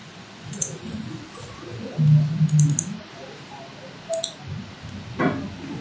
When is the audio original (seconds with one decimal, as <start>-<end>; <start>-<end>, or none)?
1.2-5.8